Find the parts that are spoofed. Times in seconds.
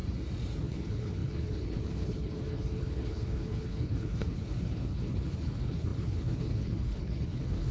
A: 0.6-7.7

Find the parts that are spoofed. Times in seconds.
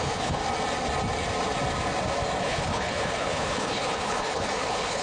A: 0.0-0.4; 2.4-5.0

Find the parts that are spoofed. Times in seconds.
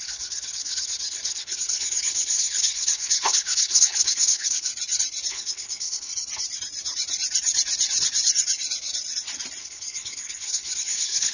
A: 0.0-4.7; 5.3-6.1; 9.6-11.3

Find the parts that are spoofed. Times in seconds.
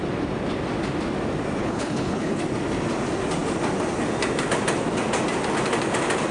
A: 1.6-2.4